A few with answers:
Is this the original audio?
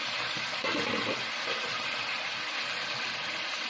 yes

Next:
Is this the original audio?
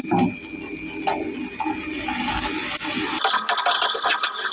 yes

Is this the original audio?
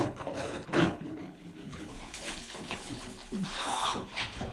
no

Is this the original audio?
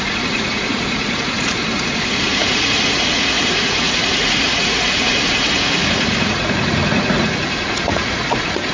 no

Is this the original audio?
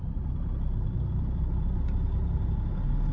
yes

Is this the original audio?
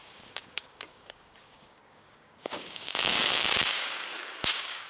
no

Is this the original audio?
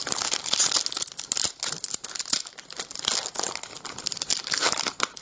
yes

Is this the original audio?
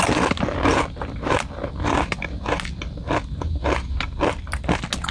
yes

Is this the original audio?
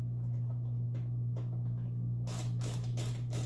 no